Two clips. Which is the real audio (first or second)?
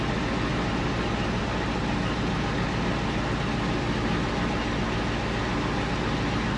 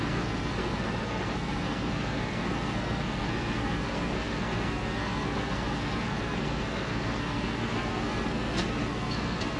first